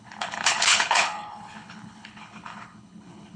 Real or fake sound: fake